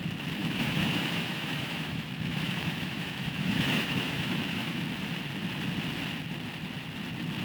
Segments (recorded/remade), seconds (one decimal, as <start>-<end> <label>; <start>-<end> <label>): 0.0-0.4 recorded; 0.4-4.8 remade; 4.8-7.4 recorded